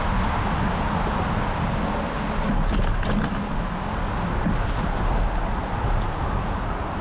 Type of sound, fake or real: real